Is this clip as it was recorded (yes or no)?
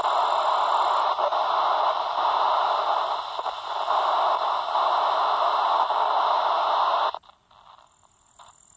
yes